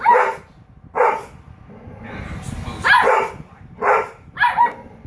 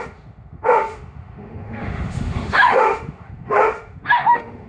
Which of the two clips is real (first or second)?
first